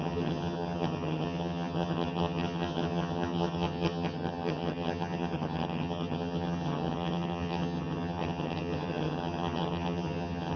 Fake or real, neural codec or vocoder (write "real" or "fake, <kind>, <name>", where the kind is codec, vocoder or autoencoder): fake, vocoder, HiFi-GAN